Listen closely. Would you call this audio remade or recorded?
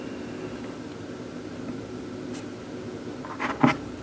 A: recorded